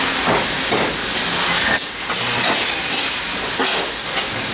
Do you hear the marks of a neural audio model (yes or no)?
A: no